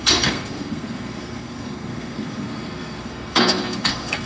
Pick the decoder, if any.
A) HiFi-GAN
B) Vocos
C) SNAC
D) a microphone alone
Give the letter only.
C